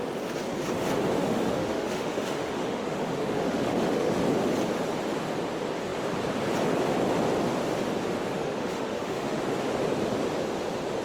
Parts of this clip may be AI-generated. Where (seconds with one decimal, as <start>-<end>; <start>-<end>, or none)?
1.2-4.2; 8.3-9.4